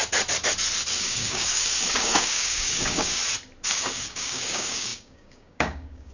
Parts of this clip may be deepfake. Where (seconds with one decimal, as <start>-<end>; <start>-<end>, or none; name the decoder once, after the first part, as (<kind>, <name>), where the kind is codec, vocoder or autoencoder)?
0.9-3.2 (codec, DAC); 3.7-6.1